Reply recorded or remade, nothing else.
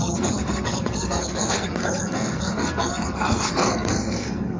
remade